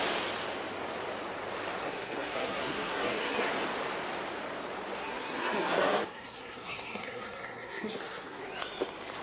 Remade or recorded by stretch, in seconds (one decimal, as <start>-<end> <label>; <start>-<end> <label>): 0.0-1.8 recorded; 1.8-3.5 remade; 3.5-5.0 recorded; 5.0-8.4 remade; 8.4-9.2 recorded